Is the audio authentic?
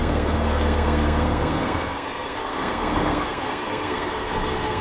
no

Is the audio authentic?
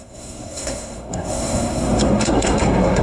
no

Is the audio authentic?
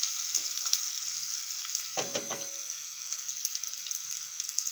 no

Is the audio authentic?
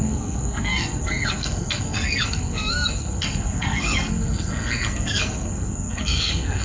no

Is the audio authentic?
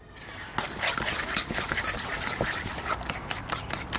yes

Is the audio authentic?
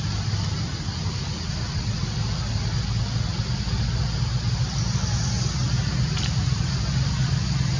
yes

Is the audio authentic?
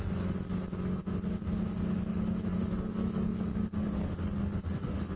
yes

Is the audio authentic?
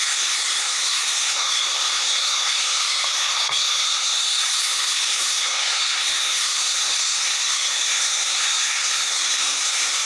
no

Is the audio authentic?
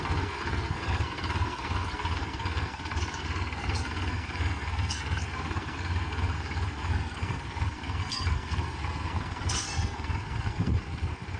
no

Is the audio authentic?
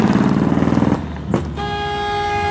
yes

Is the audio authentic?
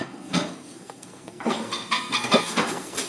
no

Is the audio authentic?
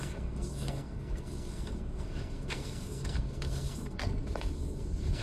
no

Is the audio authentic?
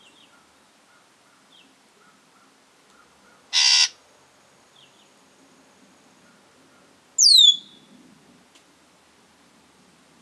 yes